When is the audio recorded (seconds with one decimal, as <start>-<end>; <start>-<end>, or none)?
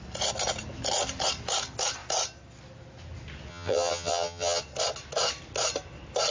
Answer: 0.0-3.5; 4.6-6.3